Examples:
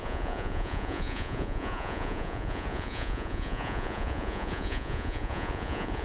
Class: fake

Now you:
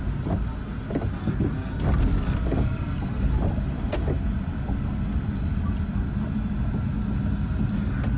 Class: real